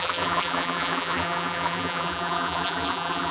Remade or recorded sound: remade